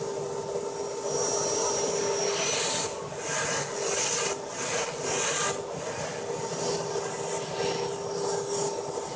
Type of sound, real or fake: real